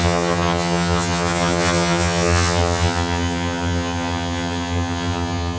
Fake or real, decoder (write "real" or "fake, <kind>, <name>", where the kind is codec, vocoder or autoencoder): fake, vocoder, HiFi-GAN